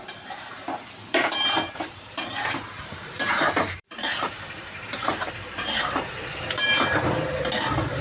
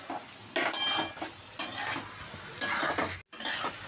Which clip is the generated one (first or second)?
first